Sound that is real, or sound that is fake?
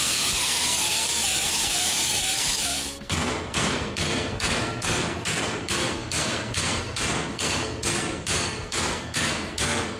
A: fake